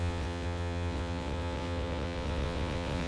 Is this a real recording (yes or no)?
no